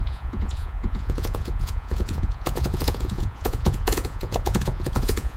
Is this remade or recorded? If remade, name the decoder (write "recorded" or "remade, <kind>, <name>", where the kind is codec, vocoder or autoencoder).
remade, vocoder, Vocos